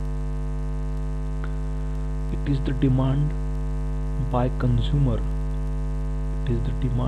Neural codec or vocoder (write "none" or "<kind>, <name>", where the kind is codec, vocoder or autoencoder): none